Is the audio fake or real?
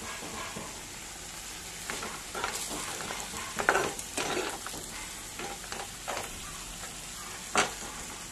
real